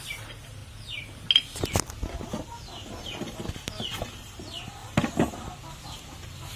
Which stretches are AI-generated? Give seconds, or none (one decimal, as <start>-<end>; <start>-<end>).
none